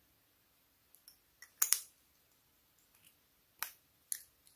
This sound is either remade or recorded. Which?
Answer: recorded